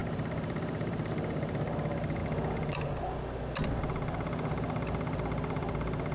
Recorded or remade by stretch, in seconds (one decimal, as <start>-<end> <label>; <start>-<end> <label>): 0.0-1.7 remade; 1.7-6.1 recorded